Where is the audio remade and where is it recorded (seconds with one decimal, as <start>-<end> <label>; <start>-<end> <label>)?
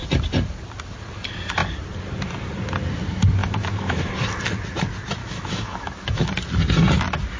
0.0-3.4 recorded; 3.4-4.1 remade; 4.1-5.2 recorded; 5.2-6.3 remade; 6.3-7.4 recorded